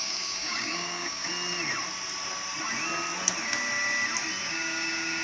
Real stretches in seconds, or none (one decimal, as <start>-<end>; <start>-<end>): 1.3-4.4